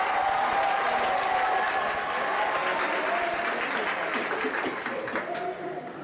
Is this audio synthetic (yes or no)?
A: no